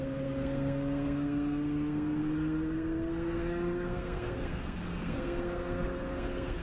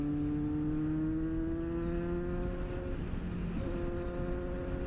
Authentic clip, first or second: second